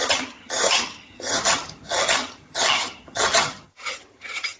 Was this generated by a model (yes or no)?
yes